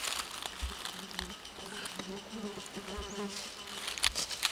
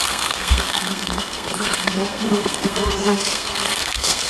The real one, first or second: first